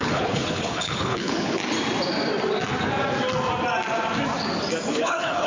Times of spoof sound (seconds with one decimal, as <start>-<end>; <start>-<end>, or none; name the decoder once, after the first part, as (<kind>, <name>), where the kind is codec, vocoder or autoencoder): 0.0-1.6 (codec, HILCodec); 4.9-5.5